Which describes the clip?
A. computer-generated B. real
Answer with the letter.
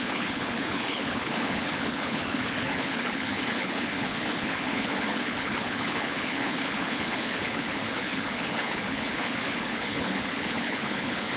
A